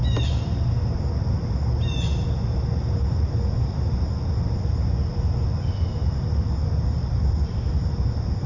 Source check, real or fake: real